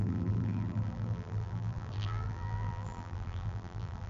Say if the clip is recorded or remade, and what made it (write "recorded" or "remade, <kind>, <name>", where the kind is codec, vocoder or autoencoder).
remade, vocoder, BigVGAN v2